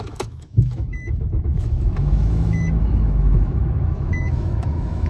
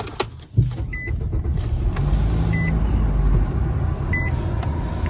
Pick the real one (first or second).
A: second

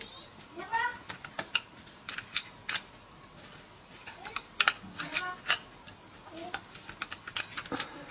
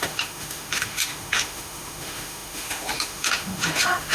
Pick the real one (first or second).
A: first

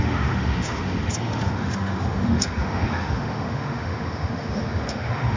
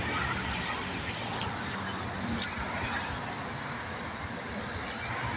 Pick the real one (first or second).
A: second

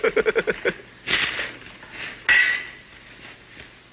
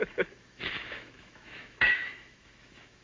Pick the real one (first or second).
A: first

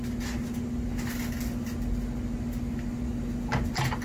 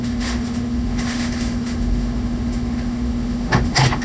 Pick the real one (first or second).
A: first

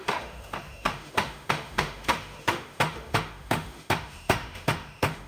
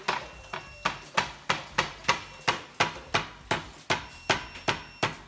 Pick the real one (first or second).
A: second